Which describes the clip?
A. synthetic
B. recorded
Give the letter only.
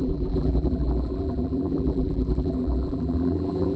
A